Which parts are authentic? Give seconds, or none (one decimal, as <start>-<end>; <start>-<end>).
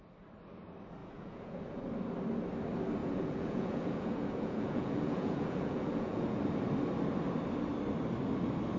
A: 0.0-1.0; 1.8-3.0; 6.4-8.8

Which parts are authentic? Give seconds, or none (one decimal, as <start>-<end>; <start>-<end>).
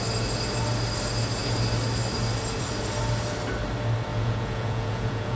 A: 0.0-4.1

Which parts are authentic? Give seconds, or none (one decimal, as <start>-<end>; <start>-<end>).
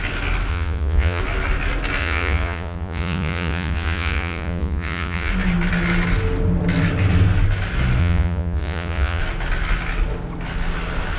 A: 0.0-0.5; 1.2-2.0; 5.3-8.0; 9.2-11.2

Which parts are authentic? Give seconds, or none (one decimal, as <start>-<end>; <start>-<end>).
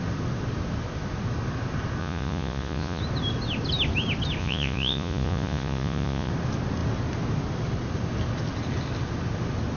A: 0.0-2.0; 3.0-4.4; 6.3-9.8